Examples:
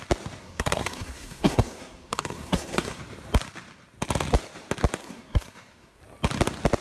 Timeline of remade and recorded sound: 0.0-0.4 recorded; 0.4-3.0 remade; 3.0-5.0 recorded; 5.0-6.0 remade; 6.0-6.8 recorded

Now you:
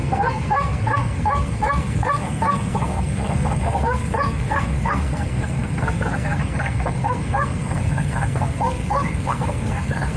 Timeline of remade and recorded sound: 0.0-10.2 remade

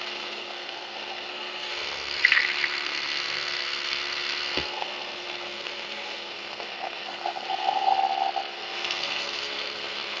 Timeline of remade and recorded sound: 0.0-7.9 remade; 7.9-8.5 recorded; 8.5-10.2 remade

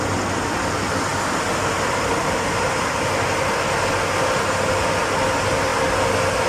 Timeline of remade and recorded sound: 0.0-6.5 recorded

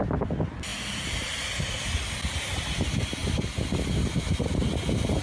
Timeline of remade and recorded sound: 0.0-5.2 recorded

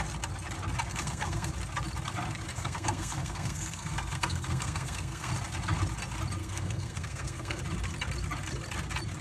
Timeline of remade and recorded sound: 0.0-0.9 recorded; 0.9-1.5 remade; 1.5-2.5 recorded; 2.5-5.3 remade; 5.3-6.4 recorded; 6.4-7.6 remade; 7.6-9.2 recorded

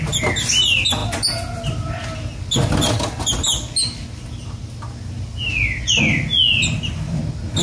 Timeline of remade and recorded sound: 0.0-7.6 recorded

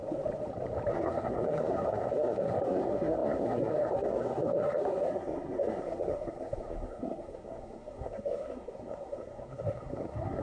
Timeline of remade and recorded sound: 0.0-0.9 recorded; 0.9-10.4 remade